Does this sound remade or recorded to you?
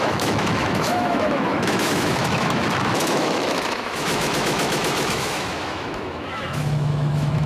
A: remade